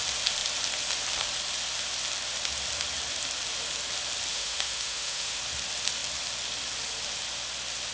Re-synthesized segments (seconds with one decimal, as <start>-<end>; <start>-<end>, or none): 4.3-5.4